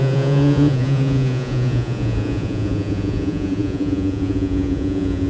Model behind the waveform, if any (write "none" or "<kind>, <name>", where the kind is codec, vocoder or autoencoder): vocoder, Vocos